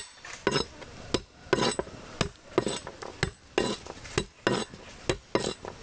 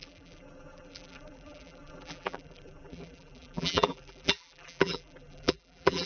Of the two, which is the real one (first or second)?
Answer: first